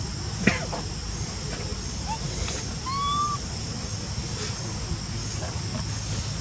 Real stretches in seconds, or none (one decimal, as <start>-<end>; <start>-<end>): 0.0-5.2; 5.8-6.4